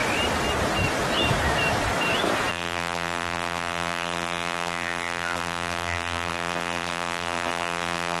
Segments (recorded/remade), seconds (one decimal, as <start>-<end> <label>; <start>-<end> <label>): 0.0-2.5 recorded; 2.5-8.2 remade